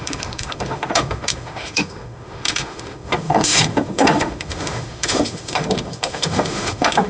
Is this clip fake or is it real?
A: fake